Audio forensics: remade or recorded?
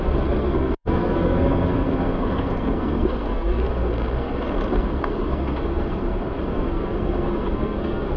remade